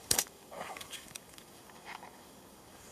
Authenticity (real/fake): fake